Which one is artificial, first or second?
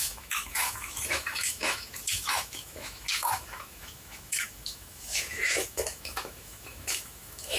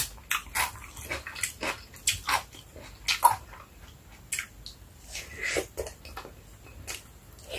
first